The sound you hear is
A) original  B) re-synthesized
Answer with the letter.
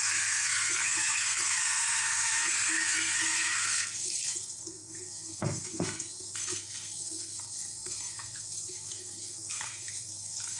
B